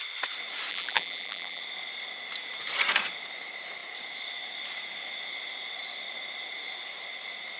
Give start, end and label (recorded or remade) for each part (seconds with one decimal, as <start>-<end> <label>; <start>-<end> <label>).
0.0-0.7 recorded; 0.7-1.6 remade; 1.6-7.6 recorded